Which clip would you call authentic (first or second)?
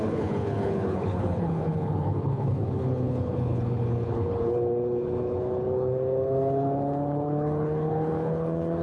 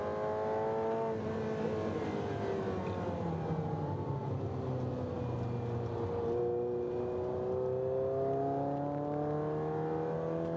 second